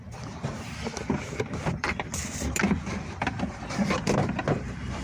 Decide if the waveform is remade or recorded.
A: remade